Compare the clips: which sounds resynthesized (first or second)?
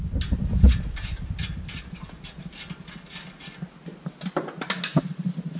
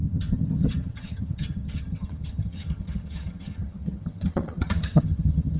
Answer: second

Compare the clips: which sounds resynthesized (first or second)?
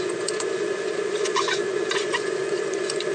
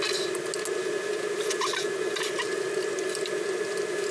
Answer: first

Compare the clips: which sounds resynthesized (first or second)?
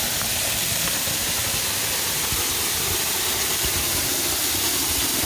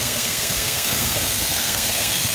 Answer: second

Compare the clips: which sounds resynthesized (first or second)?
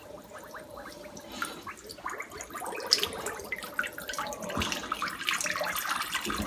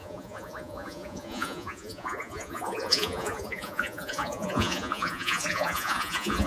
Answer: second